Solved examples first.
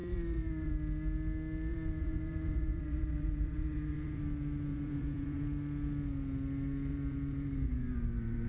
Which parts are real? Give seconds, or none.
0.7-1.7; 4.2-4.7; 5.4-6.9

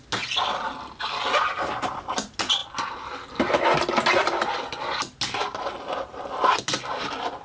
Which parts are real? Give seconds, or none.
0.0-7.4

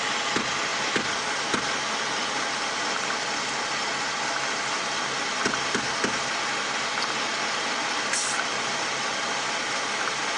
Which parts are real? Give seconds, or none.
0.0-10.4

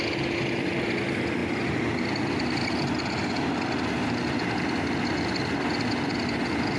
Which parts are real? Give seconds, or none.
0.0-6.8